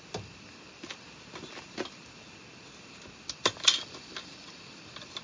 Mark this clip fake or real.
real